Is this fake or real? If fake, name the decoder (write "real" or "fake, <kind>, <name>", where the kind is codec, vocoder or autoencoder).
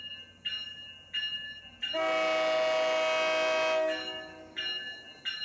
real